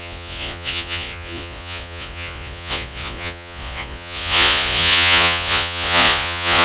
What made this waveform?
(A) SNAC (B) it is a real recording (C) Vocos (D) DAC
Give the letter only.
C